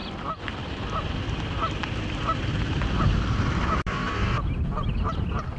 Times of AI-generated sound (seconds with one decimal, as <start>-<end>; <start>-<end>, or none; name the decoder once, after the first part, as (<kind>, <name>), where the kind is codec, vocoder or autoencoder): none